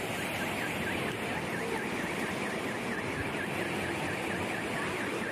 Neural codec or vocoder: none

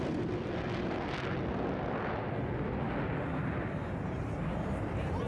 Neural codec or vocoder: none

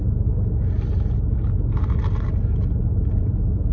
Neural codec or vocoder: none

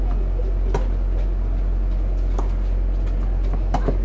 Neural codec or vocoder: none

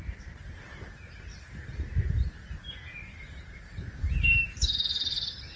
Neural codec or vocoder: vocoder, BigVGAN v2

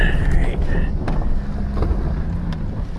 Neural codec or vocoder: none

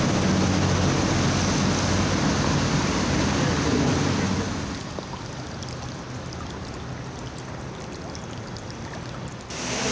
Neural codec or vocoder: none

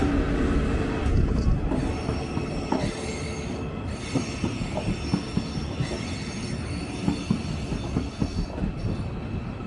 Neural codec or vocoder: none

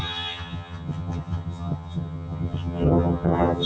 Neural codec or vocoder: vocoder, HiFi-GAN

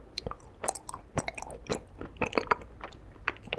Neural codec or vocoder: none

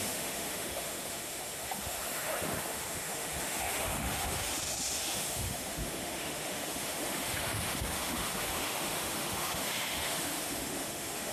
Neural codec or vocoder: autoencoder, DAC-VAE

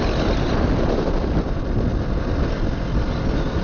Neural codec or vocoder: none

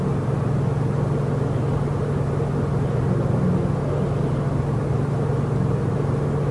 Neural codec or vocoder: none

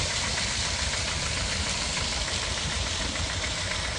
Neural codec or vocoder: vocoder, BigVGAN v2